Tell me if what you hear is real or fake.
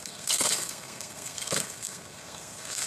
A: fake